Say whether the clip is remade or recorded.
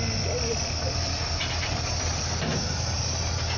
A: recorded